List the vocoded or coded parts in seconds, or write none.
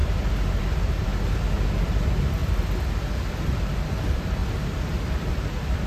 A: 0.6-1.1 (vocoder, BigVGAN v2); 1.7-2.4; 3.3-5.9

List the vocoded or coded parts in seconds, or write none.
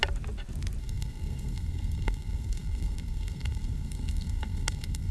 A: 0.8-5.1 (codec, SNAC)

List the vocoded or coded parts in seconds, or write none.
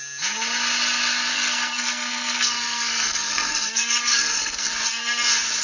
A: 1.3-4.7 (codec, SNAC)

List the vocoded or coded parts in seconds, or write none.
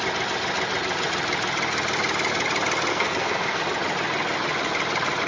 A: 2.9-3.6 (codec, SNAC)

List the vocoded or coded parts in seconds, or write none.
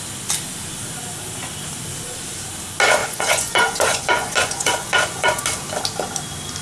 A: 3.0-5.4 (vocoder, Vocos)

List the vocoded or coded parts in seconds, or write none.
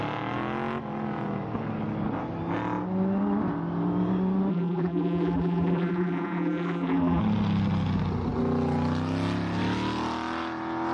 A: 4.5-7.2 (vocoder, BigVGAN v2)